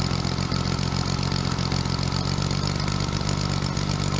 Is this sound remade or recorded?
recorded